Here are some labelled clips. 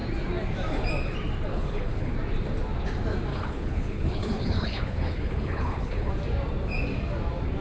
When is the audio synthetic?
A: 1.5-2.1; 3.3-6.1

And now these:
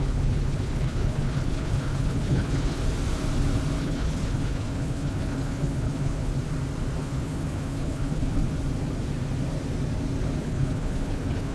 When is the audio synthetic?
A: 0.0-2.8; 3.8-6.3; 7.0-8.4; 10.4-11.5

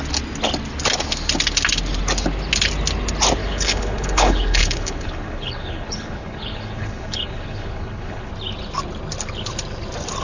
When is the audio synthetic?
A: 3.4-8.3

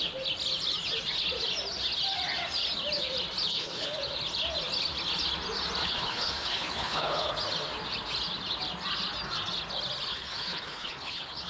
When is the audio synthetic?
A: 3.5-4.0; 5.8-7.3; 10.1-11.5